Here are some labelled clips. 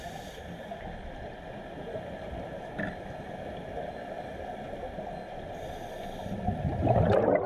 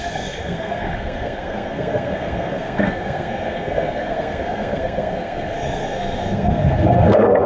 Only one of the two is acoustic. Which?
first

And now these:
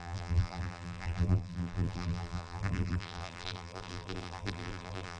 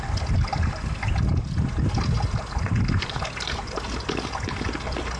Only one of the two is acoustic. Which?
second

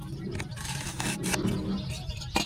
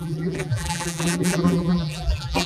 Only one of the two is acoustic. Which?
first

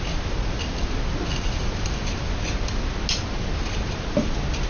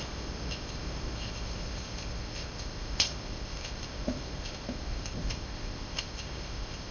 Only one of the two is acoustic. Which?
first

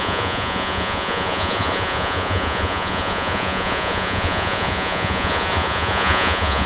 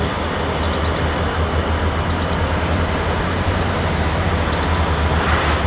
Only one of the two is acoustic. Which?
second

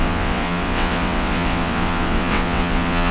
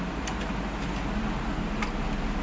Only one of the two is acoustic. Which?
second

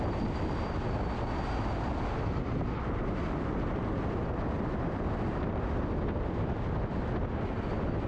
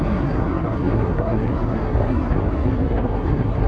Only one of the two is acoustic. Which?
first